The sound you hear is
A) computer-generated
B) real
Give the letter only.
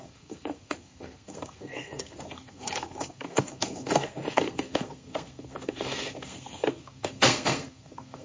A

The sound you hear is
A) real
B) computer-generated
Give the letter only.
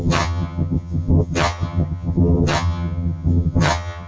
B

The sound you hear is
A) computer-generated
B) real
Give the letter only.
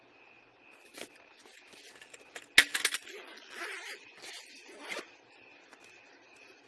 B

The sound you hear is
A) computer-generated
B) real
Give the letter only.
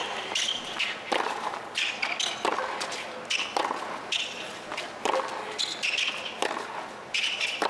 B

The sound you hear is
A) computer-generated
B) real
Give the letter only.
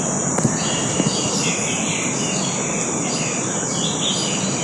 B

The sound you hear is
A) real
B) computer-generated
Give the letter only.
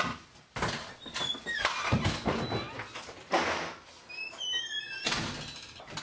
A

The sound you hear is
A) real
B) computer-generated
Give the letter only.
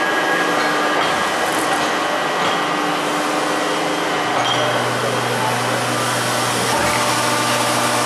A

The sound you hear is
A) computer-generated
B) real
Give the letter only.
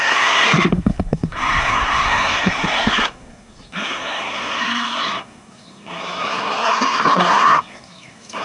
A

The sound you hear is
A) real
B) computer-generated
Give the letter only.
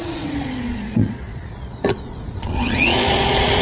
B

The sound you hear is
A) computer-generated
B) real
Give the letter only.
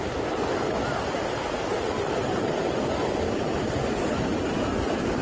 B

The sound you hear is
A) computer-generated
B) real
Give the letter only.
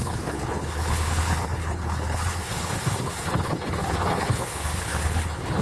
A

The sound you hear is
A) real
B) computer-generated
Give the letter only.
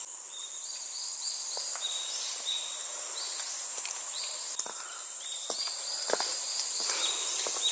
A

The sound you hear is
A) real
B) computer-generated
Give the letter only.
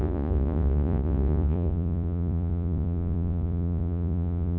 B